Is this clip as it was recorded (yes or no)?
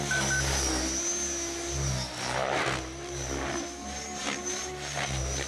yes